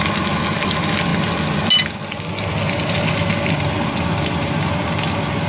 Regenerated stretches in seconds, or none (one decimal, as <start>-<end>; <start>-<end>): none